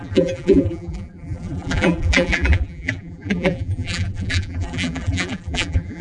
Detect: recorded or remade remade